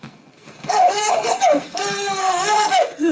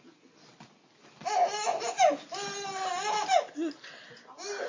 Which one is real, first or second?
second